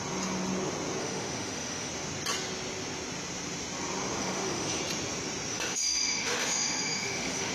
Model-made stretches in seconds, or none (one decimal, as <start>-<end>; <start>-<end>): 1.0-1.9; 4.2-4.8; 5.5-7.5